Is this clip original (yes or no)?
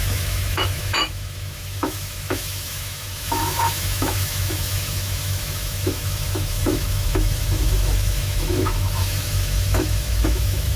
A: no